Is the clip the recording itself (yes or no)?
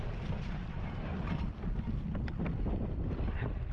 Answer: no